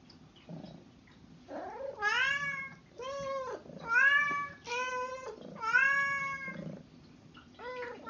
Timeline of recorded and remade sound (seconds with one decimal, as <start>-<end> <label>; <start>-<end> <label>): 0.0-8.1 recorded